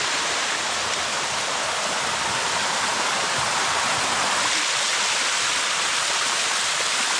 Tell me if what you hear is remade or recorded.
recorded